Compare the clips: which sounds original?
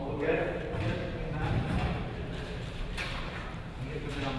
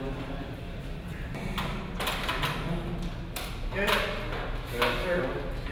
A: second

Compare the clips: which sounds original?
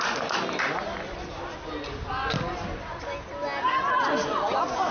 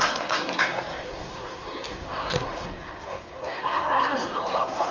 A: first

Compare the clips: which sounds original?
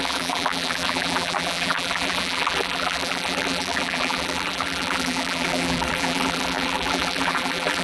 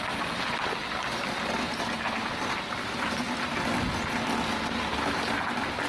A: second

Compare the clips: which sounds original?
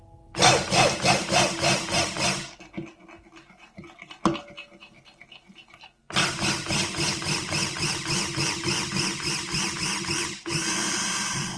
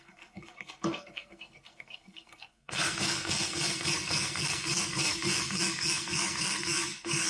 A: first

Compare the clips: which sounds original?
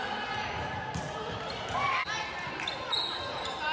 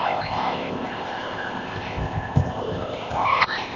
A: first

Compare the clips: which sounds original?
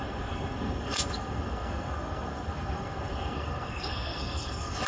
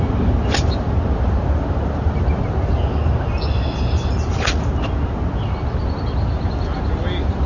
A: second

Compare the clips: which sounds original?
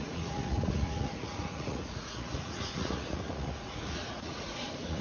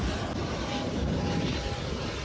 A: second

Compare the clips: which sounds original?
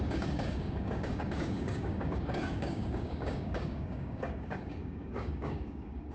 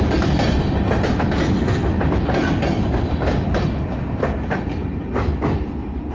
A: second